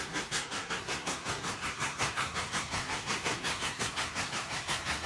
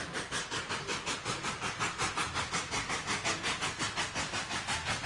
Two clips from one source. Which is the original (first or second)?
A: second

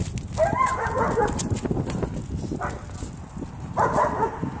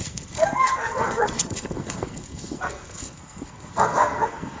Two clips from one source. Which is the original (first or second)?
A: first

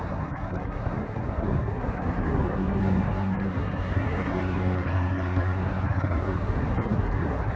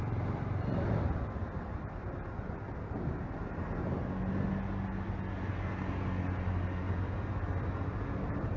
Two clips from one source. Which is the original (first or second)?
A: second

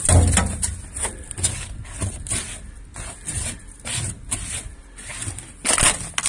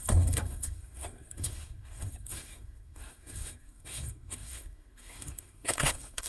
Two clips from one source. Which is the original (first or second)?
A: first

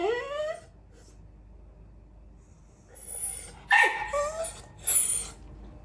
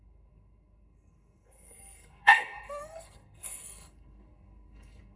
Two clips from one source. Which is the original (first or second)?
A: first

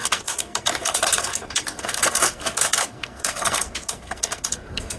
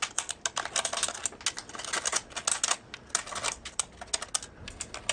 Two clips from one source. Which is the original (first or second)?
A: second